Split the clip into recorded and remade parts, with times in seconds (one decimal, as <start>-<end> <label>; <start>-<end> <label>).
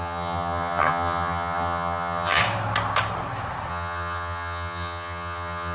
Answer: 0.0-2.4 remade; 2.4-3.7 recorded; 3.7-5.7 remade